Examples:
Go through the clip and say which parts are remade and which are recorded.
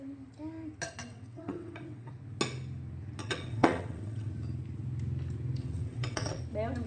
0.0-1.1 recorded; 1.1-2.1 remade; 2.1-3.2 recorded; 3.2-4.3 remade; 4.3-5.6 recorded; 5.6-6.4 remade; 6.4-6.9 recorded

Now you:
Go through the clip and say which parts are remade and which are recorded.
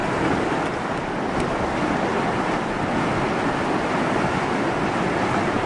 0.0-5.7 recorded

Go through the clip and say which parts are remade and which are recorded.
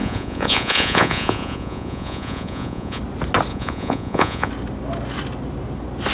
0.0-3.0 remade; 3.0-3.5 recorded; 3.5-4.5 remade; 4.5-6.1 recorded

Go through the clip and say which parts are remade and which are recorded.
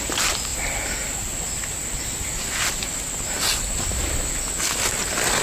0.0-5.4 recorded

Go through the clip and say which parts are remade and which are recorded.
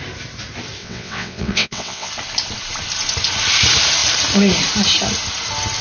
0.0-0.8 recorded; 0.8-2.1 remade; 2.1-5.8 recorded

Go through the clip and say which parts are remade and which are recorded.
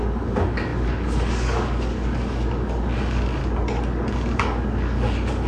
0.0-3.4 remade; 3.4-4.1 recorded; 4.1-5.5 remade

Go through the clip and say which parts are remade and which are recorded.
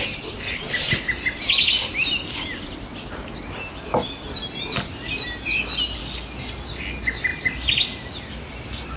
0.0-9.0 recorded